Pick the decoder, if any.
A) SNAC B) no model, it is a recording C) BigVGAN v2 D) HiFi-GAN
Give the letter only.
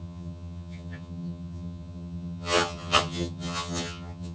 D